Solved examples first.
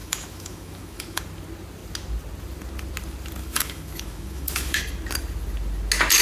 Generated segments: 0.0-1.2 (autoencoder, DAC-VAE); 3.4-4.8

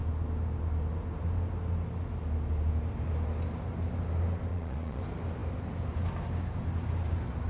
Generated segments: 4.5-5.0 (vocoder, Vocos)